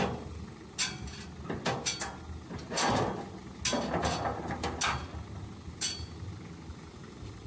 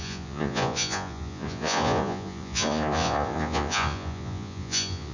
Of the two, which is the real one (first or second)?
first